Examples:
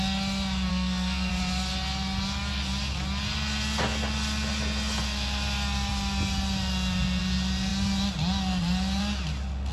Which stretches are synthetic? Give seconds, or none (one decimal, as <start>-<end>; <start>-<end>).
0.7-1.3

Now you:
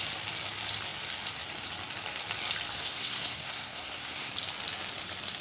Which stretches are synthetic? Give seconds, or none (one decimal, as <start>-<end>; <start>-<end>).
2.7-4.3

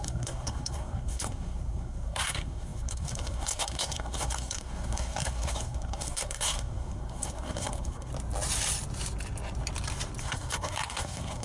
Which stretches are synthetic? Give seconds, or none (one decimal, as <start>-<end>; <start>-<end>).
0.0-8.1; 10.2-11.4

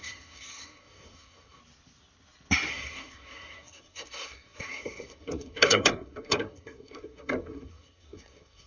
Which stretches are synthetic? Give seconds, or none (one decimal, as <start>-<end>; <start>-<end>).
0.0-1.6; 2.7-8.7

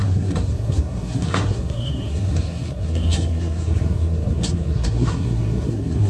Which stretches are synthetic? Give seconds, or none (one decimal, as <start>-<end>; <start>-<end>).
0.0-6.1

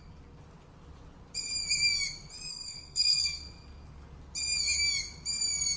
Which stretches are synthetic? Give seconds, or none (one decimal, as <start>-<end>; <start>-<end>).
2.5-3.4